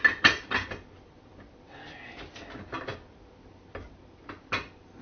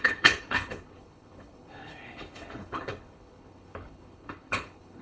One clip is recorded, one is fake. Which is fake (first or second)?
second